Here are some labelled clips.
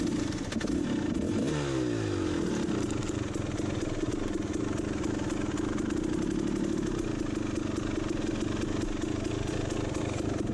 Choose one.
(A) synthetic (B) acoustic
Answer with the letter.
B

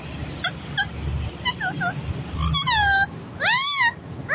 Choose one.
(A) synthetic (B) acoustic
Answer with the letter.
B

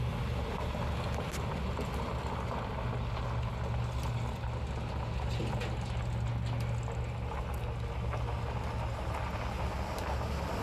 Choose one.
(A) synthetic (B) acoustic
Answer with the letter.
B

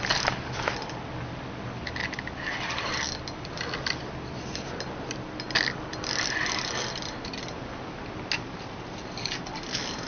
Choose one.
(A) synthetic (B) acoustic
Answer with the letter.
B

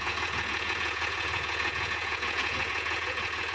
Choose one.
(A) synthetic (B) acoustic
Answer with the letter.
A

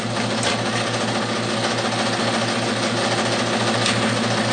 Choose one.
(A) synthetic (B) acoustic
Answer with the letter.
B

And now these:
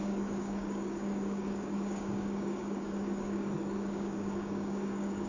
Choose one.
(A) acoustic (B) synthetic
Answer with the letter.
B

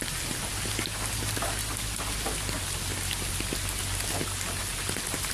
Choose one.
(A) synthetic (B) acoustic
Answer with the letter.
B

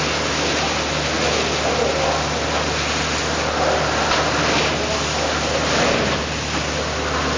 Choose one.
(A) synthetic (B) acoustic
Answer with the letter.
B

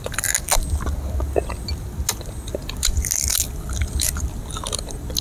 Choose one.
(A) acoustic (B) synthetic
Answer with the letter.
A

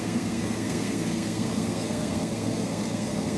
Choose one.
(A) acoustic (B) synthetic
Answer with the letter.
B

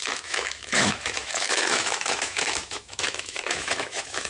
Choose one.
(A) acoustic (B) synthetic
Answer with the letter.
B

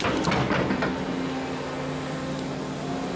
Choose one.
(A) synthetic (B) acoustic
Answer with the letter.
B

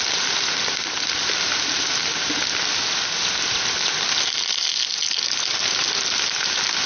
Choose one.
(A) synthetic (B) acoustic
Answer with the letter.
B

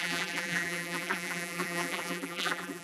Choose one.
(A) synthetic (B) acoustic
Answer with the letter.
A